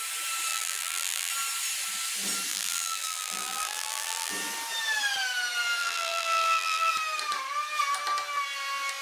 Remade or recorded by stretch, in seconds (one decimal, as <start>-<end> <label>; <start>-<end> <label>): 0.0-0.5 recorded; 0.5-1.3 remade; 1.3-2.5 recorded; 2.5-4.3 remade; 4.3-5.8 recorded; 5.8-6.9 remade; 6.9-9.0 recorded